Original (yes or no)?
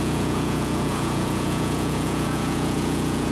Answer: no